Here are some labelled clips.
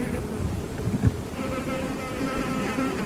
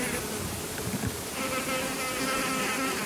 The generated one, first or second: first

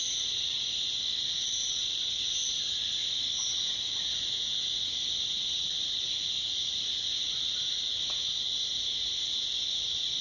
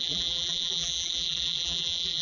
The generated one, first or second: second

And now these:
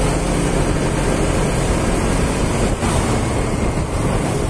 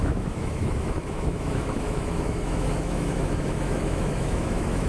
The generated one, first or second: second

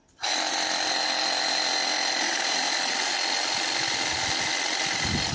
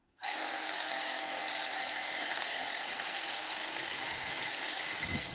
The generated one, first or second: second